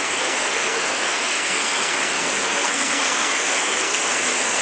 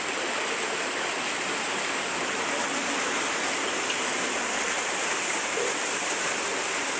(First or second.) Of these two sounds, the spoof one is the first